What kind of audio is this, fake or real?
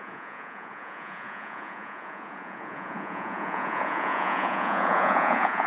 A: fake